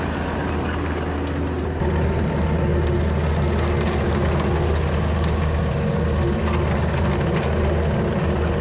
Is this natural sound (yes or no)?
yes